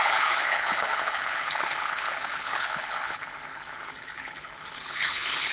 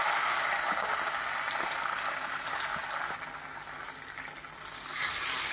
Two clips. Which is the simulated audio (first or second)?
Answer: first